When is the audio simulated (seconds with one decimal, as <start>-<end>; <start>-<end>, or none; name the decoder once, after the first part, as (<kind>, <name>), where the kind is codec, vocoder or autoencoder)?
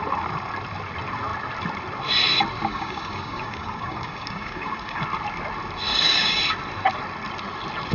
2.7-5.0 (codec, DAC); 5.9-6.4